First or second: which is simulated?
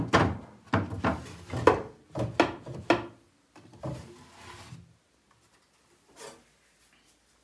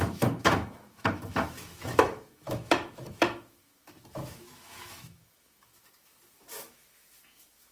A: second